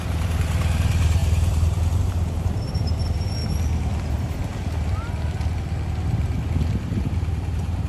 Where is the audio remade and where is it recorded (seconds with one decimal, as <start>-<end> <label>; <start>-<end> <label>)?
0.0-3.4 remade; 3.4-4.1 recorded; 4.1-4.5 remade; 4.5-6.8 recorded; 6.8-7.9 remade